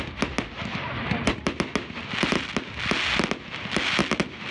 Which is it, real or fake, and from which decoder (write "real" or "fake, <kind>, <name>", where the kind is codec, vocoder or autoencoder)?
real